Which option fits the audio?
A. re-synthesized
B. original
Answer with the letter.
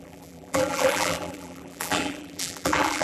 A